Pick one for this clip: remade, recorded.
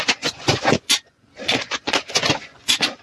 remade